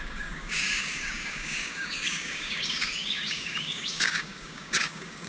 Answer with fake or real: fake